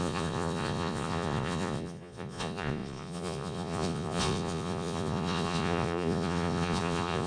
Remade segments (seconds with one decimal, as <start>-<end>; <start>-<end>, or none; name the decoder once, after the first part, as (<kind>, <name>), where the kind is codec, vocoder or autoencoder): 0.0-7.3 (vocoder, Vocos)